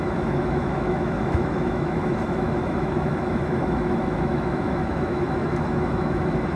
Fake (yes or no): yes